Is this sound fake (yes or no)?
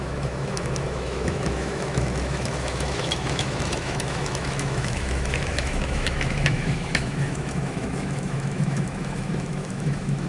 yes